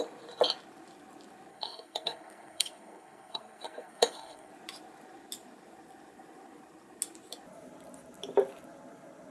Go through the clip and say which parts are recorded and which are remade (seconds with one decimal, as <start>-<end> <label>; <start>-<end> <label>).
0.0-1.5 recorded; 1.5-4.5 remade; 4.5-9.3 recorded